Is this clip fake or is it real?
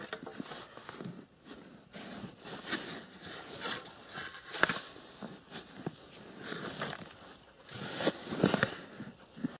real